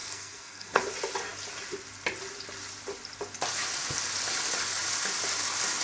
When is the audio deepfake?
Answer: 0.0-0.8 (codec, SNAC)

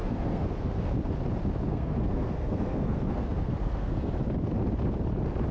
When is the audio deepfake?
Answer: 0.0-0.9 (codec, SNAC); 1.7-4.1